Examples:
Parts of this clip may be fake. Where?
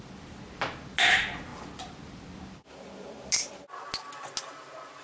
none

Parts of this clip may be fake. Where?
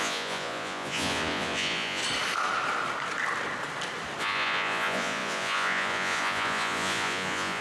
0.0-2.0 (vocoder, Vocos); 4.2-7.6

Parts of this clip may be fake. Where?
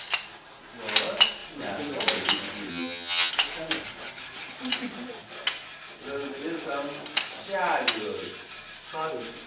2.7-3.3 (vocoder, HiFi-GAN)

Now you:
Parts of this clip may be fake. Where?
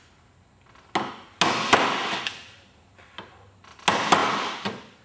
none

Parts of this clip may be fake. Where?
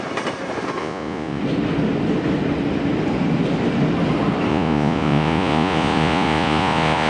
0.8-1.4 (vocoder, Vocos); 4.5-7.1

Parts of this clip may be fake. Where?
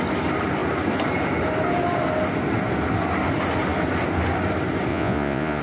4.9-5.6 (vocoder, Vocos)